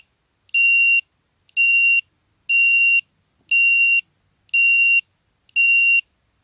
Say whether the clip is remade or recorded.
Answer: recorded